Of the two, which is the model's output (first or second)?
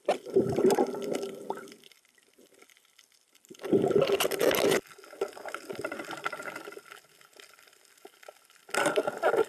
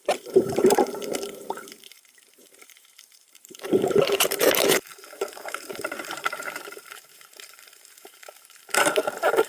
second